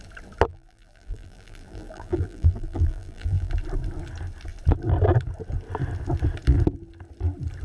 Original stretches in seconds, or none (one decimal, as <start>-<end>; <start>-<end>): 0.0-0.5; 3.5-7.6